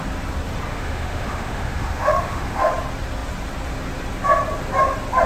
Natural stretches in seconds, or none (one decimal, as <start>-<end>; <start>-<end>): 0.0-0.7; 2.7-5.3